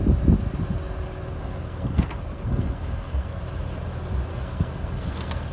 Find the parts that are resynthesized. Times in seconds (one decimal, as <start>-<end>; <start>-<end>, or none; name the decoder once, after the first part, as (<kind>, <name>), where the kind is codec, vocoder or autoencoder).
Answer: 1.4-3.4 (codec, SNAC); 4.3-5.5